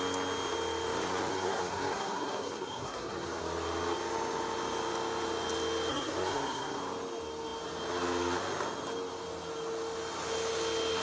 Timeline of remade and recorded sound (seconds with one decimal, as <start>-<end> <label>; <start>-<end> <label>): 0.0-1.3 recorded; 1.3-3.4 remade; 3.4-5.9 recorded; 5.9-6.8 remade; 6.8-11.0 recorded